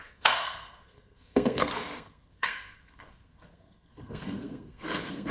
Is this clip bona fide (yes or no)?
no